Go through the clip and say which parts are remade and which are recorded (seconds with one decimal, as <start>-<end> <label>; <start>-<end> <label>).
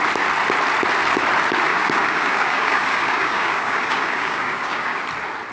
0.0-1.7 recorded; 1.7-5.0 remade; 5.0-5.5 recorded